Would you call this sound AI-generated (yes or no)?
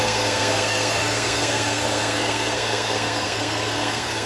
yes